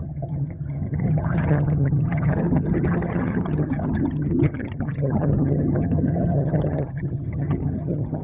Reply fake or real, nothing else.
fake